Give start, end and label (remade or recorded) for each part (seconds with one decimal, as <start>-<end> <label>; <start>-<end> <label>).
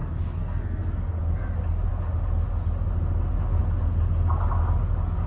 0.0-1.2 remade; 1.2-5.3 recorded